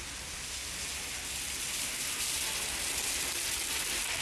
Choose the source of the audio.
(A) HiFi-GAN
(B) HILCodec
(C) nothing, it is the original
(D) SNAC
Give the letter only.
C